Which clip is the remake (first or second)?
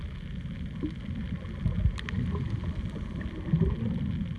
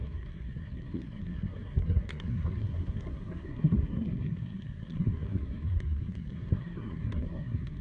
second